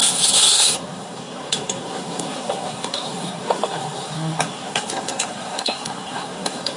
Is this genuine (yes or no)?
no